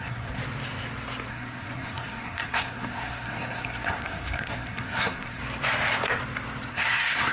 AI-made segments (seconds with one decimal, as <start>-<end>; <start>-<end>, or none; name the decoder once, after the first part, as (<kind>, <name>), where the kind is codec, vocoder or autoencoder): 0.0-0.4 (codec, SNAC); 1.3-5.4; 6.7-7.3